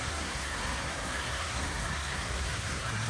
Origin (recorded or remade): remade